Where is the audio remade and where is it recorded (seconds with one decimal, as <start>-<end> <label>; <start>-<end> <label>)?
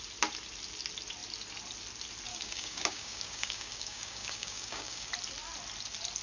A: 0.0-2.3 recorded; 2.3-5.1 remade; 5.1-6.2 recorded